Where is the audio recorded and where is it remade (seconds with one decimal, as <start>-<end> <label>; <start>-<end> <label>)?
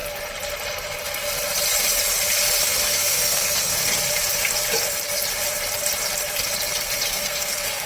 0.0-2.6 recorded; 2.6-3.7 remade; 3.7-7.1 recorded; 7.1-7.9 remade